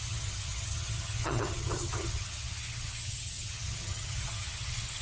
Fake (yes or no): yes